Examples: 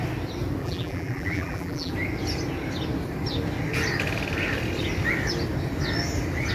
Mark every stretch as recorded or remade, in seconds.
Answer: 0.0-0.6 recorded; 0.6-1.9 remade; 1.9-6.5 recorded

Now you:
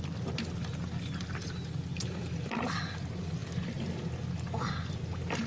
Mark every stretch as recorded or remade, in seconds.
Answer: 0.0-2.0 recorded; 2.0-2.8 remade; 2.8-5.5 recorded

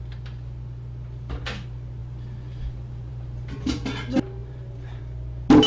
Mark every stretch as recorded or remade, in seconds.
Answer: 0.0-2.0 recorded; 2.0-3.1 remade; 3.1-4.4 recorded; 4.4-5.0 remade; 5.0-5.7 recorded

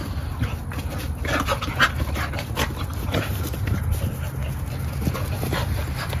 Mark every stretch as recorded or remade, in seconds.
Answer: 0.0-2.9 recorded; 2.9-3.7 remade; 3.7-6.2 recorded